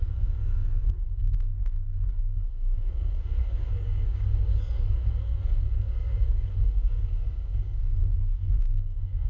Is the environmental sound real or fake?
fake